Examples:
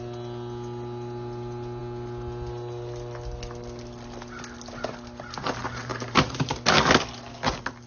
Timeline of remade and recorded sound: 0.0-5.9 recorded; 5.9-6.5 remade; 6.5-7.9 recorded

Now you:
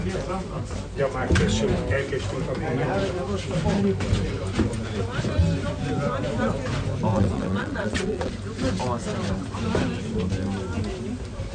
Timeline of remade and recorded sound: 0.0-7.1 recorded; 7.1-8.3 remade; 8.3-11.5 recorded

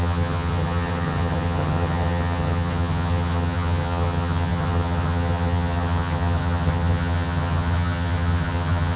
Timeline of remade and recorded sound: 0.0-9.0 remade

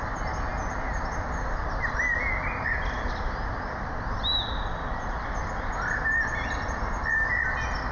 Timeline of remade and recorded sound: 0.0-7.9 recorded

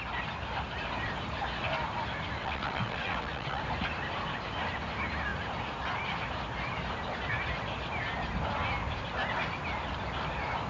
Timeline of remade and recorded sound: 0.0-2.4 recorded; 2.4-3.6 remade; 3.6-10.7 recorded